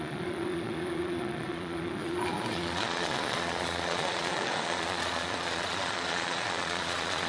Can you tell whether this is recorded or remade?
remade